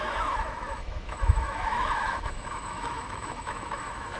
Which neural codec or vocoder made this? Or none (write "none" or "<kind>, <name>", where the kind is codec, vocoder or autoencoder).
autoencoder, DAC-VAE